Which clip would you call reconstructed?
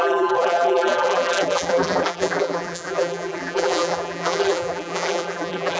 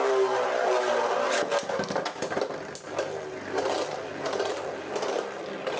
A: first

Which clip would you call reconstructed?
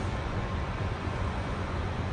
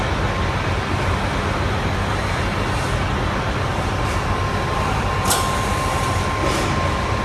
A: first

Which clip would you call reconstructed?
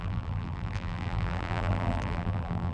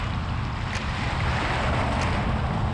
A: first